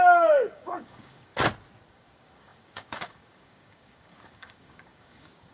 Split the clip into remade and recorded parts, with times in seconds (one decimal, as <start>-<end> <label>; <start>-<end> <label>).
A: 0.0-1.3 remade; 1.3-1.9 recorded; 1.9-5.5 remade